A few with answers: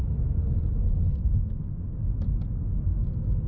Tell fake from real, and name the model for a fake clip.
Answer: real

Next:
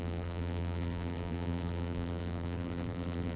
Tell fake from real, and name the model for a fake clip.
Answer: fake, vocoder, BigVGAN v2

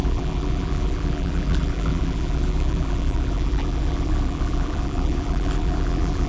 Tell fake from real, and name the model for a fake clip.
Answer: fake, vocoder, BigVGAN v2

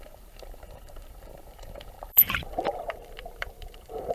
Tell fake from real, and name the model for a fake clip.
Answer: fake, vocoder, BigVGAN v2